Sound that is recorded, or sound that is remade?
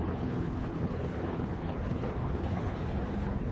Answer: remade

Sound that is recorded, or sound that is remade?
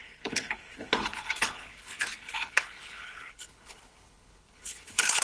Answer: remade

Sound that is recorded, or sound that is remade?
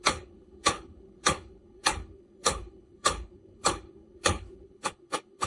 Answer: remade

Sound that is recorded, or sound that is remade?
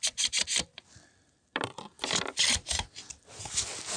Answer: recorded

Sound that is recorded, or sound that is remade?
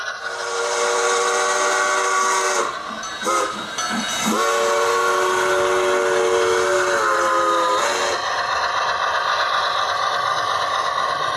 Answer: recorded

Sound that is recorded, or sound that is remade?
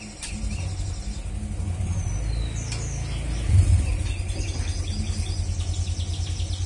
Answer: recorded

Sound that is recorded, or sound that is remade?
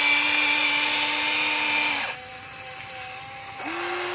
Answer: recorded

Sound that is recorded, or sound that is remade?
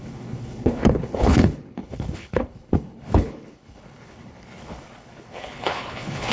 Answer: remade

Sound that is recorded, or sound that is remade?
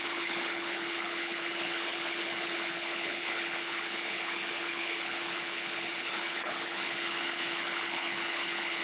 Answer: remade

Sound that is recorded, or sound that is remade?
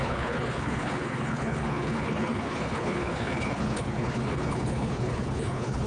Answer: remade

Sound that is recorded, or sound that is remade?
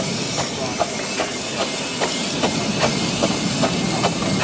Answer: recorded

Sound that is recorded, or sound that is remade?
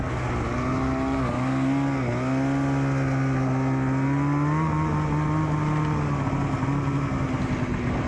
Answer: recorded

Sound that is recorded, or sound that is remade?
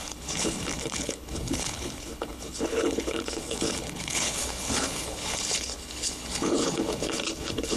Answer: remade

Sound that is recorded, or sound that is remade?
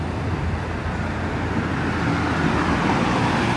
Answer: recorded